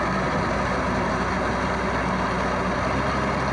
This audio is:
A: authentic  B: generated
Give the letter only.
A